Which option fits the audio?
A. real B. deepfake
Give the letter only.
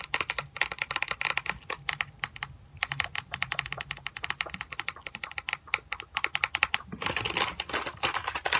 A